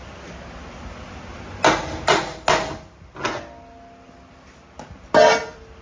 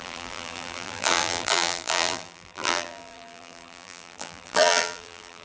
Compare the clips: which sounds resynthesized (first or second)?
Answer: second